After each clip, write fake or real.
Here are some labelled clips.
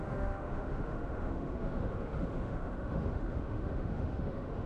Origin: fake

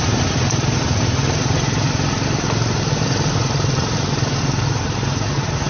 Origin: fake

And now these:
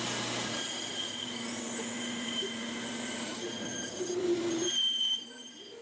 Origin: real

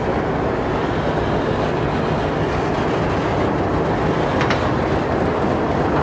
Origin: real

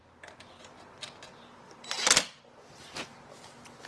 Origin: real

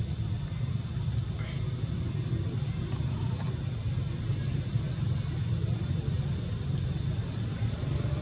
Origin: real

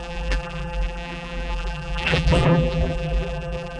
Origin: fake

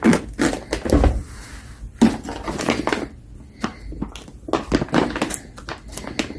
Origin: real